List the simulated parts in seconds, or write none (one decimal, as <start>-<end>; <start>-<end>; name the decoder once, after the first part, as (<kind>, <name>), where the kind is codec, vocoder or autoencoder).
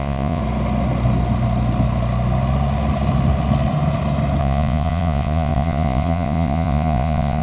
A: 0.0-0.4 (vocoder, Vocos); 4.4-7.4